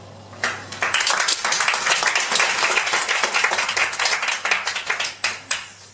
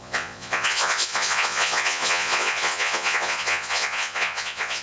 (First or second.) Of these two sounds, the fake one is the second